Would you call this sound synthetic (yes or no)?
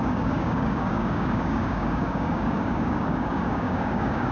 yes